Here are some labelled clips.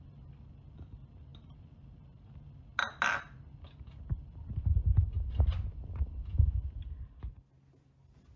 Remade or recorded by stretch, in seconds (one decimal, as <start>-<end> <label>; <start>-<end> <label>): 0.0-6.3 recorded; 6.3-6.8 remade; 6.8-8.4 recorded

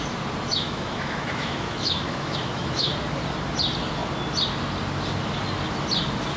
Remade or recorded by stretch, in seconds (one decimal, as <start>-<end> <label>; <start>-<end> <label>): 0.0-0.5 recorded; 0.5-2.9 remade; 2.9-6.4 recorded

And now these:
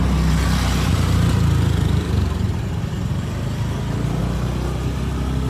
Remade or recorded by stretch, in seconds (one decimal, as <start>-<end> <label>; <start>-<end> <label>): 0.0-0.9 recorded; 0.9-4.2 remade; 4.2-5.5 recorded